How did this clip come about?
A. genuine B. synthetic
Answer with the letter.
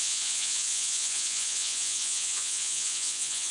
B